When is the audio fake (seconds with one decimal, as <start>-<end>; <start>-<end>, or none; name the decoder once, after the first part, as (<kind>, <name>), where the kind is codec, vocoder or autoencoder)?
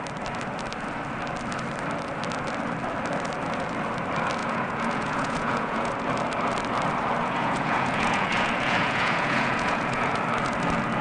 4.4-5.9 (vocoder, Vocos); 7.2-10.2